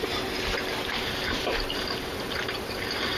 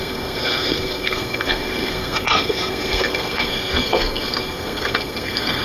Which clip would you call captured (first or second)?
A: first